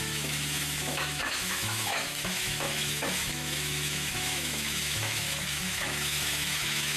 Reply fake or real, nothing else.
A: fake